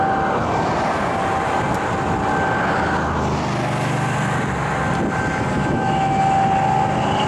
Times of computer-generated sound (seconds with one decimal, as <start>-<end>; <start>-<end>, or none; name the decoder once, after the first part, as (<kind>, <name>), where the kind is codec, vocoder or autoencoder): 5.6-6.2 (autoencoder, DAC-VAE)